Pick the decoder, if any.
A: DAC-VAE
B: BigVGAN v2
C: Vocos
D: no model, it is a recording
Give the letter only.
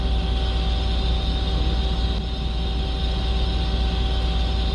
D